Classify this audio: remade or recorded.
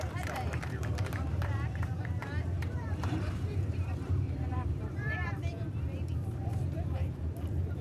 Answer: remade